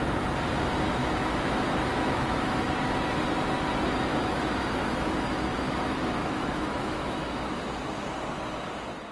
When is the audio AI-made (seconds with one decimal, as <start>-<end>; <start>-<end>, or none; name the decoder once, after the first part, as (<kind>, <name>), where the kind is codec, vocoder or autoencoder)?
1.0-2.7 (autoencoder, DAC-VAE); 4.1-7.5